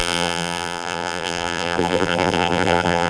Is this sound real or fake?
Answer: fake